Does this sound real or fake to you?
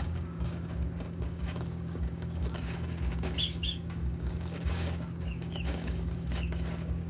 fake